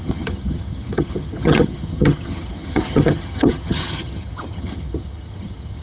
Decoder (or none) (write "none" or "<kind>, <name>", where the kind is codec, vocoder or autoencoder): vocoder, HiFi-GAN